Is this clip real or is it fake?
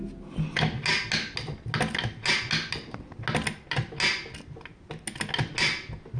real